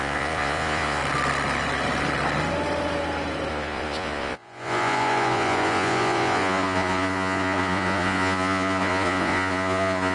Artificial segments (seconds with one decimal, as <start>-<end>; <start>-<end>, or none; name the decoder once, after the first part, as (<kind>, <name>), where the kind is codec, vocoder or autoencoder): 0.0-1.0 (vocoder, Vocos); 3.5-10.1